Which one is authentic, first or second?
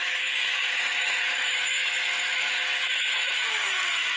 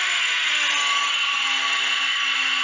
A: second